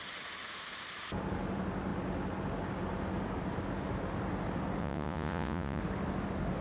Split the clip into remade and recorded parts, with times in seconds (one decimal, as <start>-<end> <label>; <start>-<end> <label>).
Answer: 0.0-4.8 recorded; 4.8-5.8 remade; 5.8-6.6 recorded